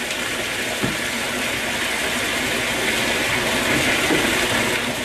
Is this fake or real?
real